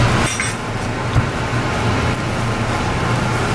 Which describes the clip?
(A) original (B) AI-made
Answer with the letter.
A